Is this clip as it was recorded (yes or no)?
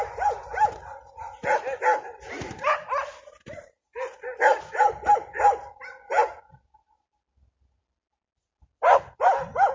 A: yes